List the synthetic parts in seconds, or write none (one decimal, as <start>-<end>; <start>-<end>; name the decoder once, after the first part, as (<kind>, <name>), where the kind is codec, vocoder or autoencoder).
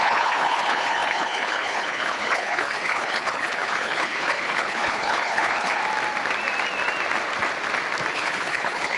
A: 0.0-5.8 (codec, HILCodec); 8.1-9.0